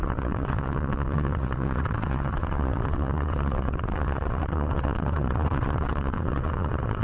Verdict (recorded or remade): remade